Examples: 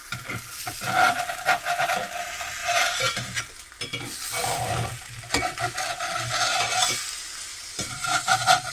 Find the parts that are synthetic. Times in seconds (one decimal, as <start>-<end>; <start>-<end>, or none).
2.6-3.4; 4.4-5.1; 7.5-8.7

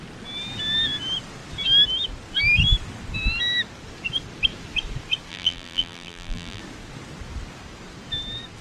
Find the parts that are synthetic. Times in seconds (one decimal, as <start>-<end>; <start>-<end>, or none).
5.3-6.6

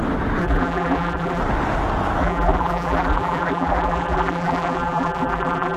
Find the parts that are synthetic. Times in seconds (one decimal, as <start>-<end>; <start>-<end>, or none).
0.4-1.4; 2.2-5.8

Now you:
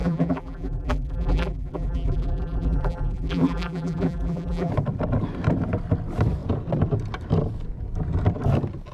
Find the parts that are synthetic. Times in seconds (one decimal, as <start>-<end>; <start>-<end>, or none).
0.0-4.7